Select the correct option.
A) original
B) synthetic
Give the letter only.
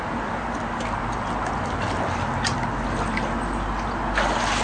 A